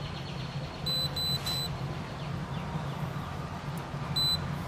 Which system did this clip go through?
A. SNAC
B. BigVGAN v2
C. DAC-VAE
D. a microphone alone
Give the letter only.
D